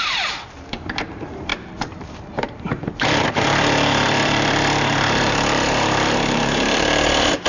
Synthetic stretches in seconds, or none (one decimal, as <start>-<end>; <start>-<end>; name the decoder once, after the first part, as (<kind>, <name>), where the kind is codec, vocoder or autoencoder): 0.0-1.5 (vocoder, BigVGAN v2); 2.0-7.5